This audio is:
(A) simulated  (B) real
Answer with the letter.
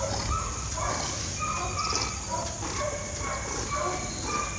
B